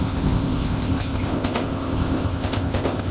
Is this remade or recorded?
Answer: remade